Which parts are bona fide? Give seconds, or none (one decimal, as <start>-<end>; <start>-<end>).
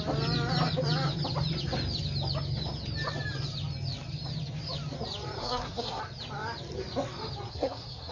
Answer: 0.0-5.4; 6.0-7.5